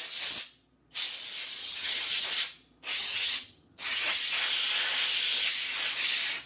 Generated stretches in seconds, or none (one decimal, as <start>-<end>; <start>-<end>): 1.6-2.1; 2.9-4.2